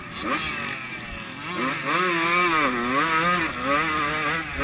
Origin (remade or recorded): recorded